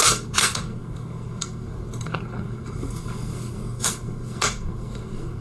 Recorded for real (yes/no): no